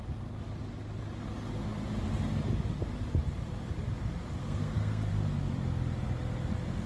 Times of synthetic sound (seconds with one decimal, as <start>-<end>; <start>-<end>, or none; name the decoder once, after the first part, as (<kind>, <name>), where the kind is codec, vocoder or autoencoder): 4.4-5.1 (codec, SNAC)